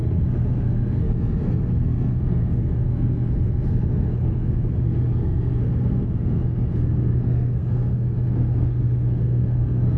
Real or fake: fake